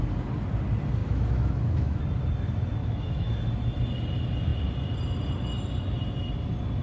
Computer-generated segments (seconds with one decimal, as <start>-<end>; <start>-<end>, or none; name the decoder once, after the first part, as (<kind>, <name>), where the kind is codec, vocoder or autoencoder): 1.0-2.0 (autoencoder, DAC-VAE); 2.8-3.3